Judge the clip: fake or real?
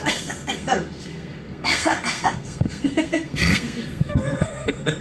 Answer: fake